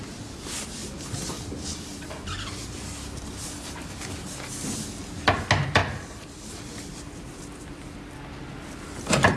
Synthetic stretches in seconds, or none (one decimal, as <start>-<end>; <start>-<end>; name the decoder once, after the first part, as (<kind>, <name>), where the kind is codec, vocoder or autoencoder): 0.8-4.7 (vocoder, BigVGAN v2); 5.8-6.5